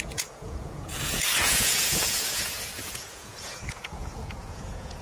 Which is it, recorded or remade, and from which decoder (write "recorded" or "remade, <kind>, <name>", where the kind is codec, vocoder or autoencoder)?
remade, vocoder, Vocos